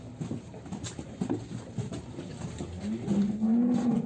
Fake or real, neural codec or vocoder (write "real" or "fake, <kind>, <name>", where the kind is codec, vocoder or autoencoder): real